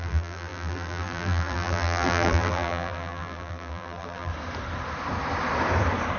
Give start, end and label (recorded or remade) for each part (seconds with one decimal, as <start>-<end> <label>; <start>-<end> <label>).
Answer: 0.0-4.3 remade; 4.3-6.2 recorded